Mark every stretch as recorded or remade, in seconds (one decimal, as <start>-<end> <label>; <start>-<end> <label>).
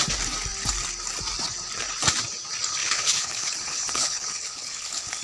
0.0-2.8 recorded; 2.8-5.2 remade